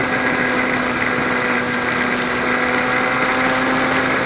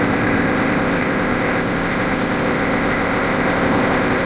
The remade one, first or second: second